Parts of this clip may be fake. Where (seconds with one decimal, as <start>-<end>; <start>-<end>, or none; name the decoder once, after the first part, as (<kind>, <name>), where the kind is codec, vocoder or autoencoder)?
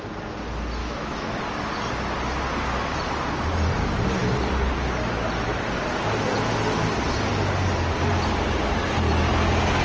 0.8-1.4 (autoencoder, DAC-VAE)